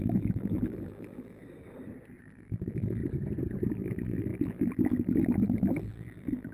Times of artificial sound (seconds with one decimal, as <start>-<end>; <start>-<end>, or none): 0.0-1.4; 2.2-3.0; 3.7-6.5